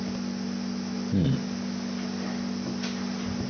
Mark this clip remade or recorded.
recorded